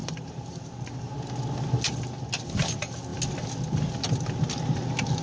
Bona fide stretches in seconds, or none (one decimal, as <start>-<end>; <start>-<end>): 1.1-5.2